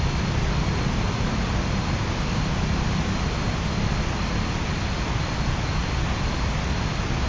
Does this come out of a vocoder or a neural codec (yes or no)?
no